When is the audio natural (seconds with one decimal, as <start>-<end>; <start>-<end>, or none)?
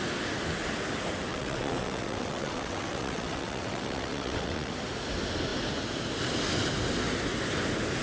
0.0-1.3; 4.7-8.0